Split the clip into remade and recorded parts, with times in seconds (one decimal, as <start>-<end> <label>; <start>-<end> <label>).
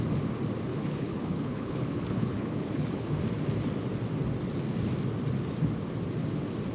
0.0-0.7 recorded; 0.7-3.2 remade; 3.2-6.7 recorded